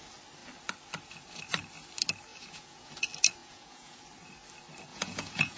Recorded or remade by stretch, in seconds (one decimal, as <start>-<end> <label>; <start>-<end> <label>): 0.0-2.3 recorded; 2.3-2.9 remade; 2.9-3.4 recorded; 3.4-4.0 remade; 4.0-4.9 recorded; 4.9-5.6 remade